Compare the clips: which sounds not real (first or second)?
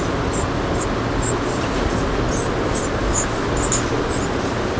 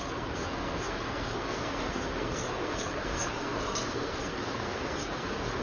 second